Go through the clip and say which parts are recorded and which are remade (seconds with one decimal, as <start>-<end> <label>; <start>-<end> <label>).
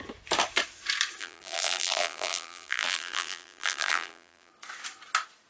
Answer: 0.0-1.2 recorded; 1.2-4.5 remade; 4.5-5.5 recorded